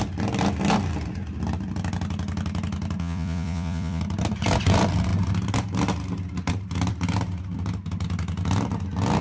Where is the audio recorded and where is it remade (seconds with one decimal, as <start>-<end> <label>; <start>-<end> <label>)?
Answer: 0.0-3.0 recorded; 3.0-4.0 remade; 4.0-9.2 recorded